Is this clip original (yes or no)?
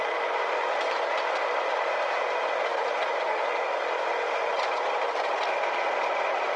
yes